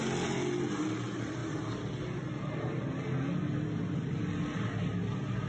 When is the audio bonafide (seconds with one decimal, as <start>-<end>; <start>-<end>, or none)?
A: 0.0-5.5